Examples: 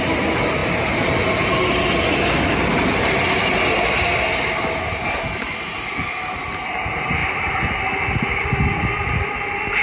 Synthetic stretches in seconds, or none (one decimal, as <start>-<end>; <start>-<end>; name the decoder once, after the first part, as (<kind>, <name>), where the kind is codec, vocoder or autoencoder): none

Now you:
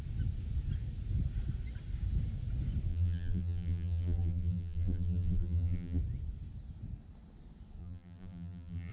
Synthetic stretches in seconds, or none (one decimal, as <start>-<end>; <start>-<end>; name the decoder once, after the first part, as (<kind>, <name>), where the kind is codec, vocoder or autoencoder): 2.9-6.0 (vocoder, BigVGAN v2); 7.8-8.9

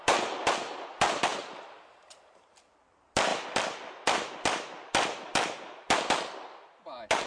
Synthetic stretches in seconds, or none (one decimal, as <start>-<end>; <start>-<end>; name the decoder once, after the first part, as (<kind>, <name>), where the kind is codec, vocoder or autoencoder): 1.3-2.6 (vocoder, BigVGAN v2)

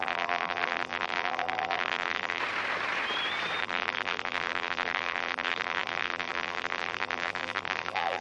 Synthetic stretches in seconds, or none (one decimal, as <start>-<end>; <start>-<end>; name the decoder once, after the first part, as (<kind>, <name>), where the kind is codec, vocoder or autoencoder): 0.0-2.4 (vocoder, BigVGAN v2); 3.6-8.2

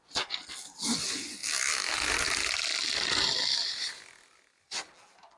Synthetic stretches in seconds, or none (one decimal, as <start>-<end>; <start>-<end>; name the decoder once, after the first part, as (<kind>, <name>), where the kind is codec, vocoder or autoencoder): none

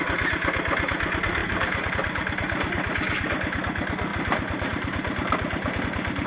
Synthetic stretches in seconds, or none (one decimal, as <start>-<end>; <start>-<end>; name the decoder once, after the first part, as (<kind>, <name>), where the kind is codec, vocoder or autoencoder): 1.4-1.9 (vocoder, BigVGAN v2); 4.1-5.8